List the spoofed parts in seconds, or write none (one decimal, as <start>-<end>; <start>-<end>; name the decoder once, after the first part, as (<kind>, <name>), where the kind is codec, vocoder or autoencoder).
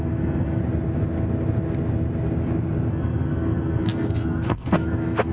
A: 0.0-0.6 (codec, SNAC); 2.9-5.3